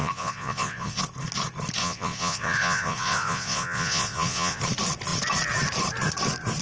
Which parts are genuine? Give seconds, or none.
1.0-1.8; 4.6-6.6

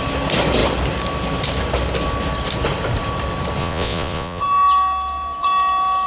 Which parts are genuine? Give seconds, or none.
0.0-3.6; 4.4-6.1

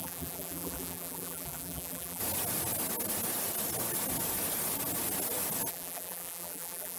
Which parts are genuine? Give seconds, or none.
2.2-5.7

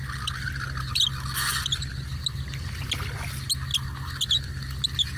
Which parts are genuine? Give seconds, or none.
0.0-5.2

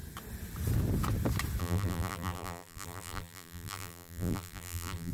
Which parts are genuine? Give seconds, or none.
0.0-1.6

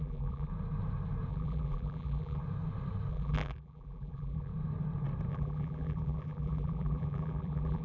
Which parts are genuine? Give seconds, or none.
0.5-1.3; 2.4-3.1; 4.5-5.3

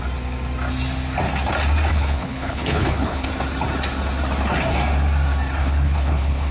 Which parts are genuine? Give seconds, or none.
0.0-1.9; 3.3-5.6

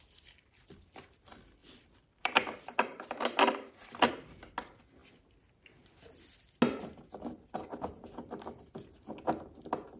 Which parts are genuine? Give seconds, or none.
0.0-1.6; 4.1-10.0